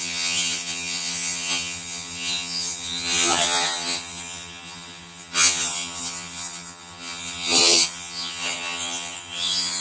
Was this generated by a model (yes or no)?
yes